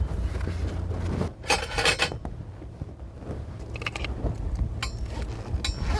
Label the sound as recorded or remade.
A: recorded